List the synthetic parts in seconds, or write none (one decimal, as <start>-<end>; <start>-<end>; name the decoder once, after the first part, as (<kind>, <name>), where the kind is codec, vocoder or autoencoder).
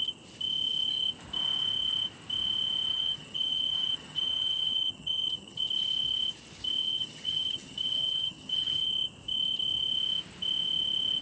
2.9-5.6 (vocoder, HiFi-GAN); 6.8-8.9